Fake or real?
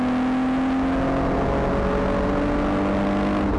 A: real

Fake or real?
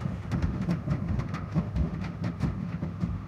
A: fake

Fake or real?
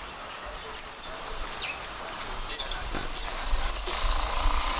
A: real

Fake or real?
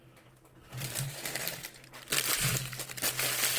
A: fake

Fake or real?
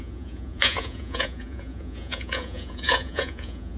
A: fake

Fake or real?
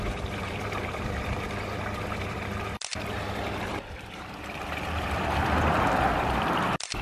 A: fake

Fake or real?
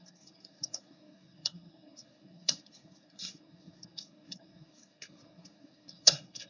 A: fake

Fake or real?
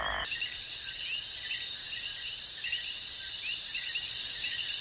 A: real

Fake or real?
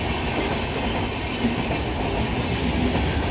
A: real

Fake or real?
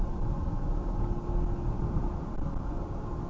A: real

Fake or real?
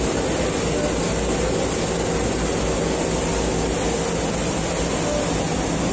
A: real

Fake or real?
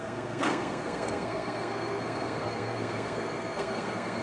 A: fake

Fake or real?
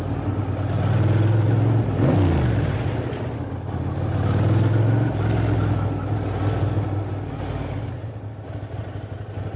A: real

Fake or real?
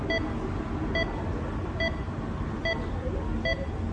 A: real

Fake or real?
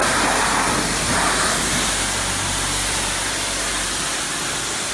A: real